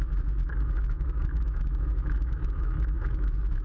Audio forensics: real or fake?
fake